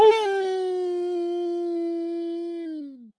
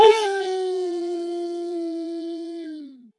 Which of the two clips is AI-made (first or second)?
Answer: second